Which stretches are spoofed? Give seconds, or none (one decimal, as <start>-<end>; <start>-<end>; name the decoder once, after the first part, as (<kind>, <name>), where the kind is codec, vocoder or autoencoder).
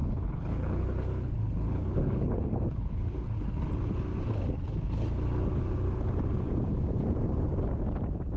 0.0-3.6 (codec, HILCodec)